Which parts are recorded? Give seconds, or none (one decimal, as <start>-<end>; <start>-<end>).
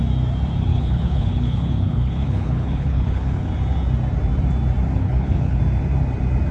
0.0-0.7; 3.5-5.0; 5.6-6.5